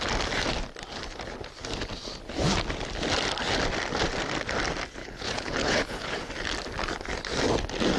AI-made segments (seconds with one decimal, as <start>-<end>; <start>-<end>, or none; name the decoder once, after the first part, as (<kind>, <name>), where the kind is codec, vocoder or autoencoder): 5.0-6.3 (codec, HILCodec)